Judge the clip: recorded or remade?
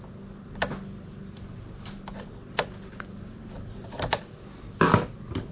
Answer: recorded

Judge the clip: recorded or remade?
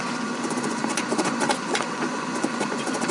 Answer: remade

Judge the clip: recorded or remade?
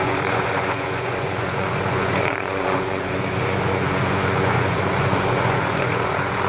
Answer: remade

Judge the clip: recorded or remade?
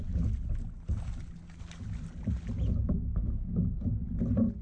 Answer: recorded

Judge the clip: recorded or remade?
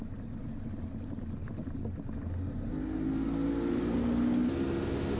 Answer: recorded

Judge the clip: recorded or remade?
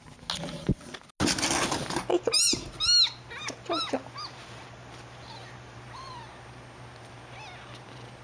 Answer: recorded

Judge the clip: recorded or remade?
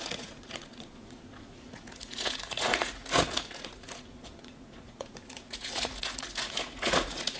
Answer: remade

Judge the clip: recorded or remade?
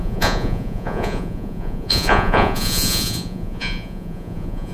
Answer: remade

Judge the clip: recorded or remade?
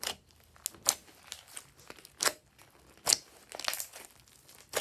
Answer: recorded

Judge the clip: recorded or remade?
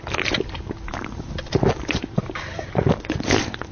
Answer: recorded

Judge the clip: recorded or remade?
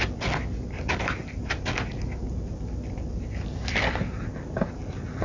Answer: recorded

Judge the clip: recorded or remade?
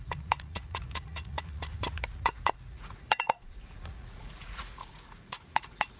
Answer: remade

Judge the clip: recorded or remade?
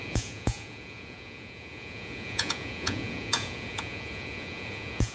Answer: remade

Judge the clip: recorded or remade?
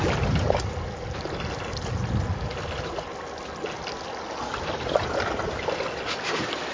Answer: recorded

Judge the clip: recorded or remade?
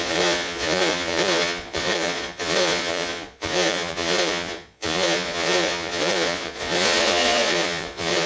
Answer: remade